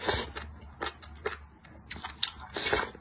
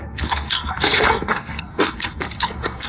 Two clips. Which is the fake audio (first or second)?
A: second